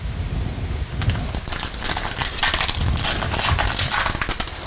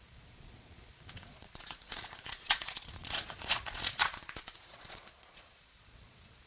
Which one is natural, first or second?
first